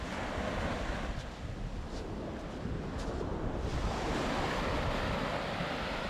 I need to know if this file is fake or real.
real